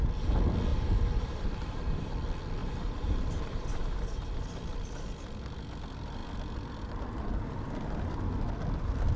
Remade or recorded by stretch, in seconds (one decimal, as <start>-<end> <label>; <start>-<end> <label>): 0.0-0.7 recorded; 0.7-2.1 remade; 2.1-2.6 recorded; 2.6-4.4 remade; 4.4-9.2 recorded